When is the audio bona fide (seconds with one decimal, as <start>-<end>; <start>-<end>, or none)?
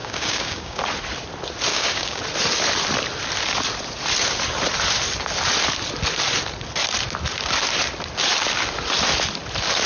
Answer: 0.8-1.7; 2.2-9.9